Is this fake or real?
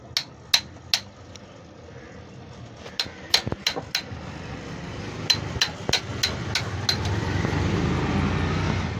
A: real